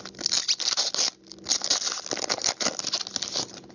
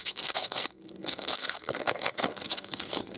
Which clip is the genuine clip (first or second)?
first